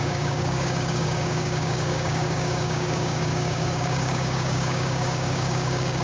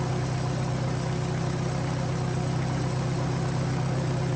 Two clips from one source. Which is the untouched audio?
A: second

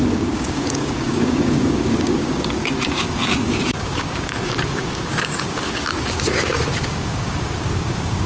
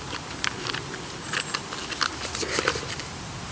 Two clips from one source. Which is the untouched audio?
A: second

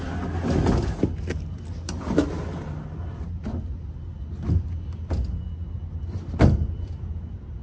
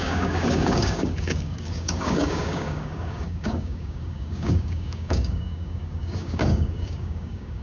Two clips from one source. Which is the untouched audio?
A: first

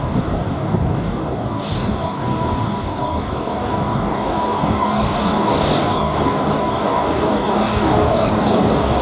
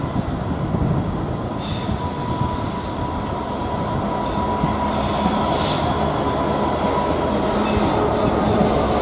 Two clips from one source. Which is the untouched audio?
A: second